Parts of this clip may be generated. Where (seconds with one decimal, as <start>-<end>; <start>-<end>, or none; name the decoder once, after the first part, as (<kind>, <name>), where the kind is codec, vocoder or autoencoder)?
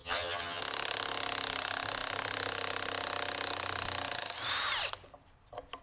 0.0-0.6 (vocoder, HiFi-GAN)